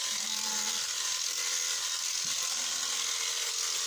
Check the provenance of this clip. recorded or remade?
recorded